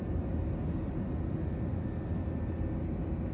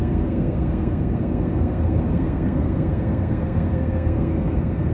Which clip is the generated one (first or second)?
second